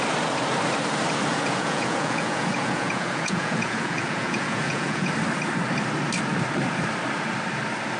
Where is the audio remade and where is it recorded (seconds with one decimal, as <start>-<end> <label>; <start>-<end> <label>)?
0.0-1.3 recorded; 1.3-5.1 remade; 5.1-8.0 recorded